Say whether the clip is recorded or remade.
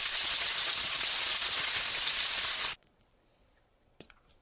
remade